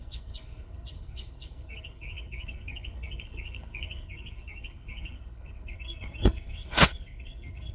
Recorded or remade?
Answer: remade